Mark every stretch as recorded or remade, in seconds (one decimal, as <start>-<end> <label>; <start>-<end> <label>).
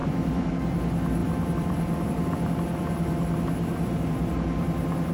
0.0-0.5 remade; 0.5-1.2 recorded; 1.2-4.3 remade; 4.3-5.1 recorded